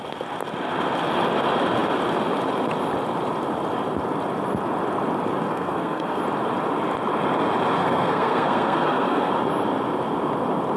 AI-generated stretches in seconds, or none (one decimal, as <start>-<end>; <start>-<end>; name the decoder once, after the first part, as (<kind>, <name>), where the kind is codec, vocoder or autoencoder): 5.5-6.2 (codec, SNAC); 7.8-9.3